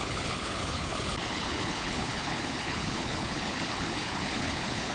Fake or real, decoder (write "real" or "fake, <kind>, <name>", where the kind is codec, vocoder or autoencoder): fake, codec, HILCodec